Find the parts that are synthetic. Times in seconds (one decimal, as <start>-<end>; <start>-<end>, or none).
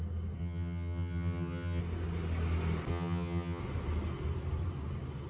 0.4-1.8; 2.9-3.6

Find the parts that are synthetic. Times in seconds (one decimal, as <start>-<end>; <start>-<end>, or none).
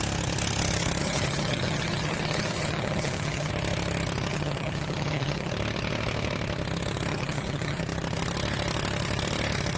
1.0-3.5; 4.3-5.5; 7.1-7.8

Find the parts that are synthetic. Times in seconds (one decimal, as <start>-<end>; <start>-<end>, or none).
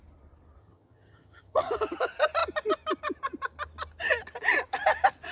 0.6-1.7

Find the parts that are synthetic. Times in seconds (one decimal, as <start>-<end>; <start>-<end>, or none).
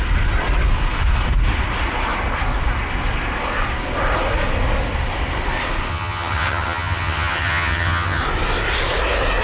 5.9-8.2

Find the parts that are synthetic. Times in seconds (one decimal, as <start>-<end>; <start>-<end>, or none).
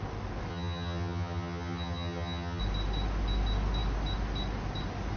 0.5-2.6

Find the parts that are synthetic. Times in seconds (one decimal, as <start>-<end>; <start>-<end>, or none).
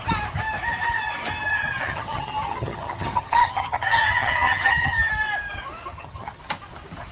1.5-5.1; 5.9-6.4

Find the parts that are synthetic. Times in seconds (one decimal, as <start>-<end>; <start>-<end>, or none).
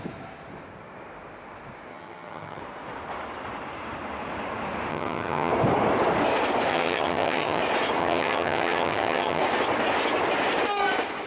1.9-2.6; 4.9-5.5; 6.7-7.6; 8.0-9.4